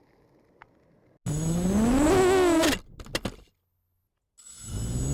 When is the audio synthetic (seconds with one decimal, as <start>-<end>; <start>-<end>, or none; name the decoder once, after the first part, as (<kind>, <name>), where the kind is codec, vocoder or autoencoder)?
none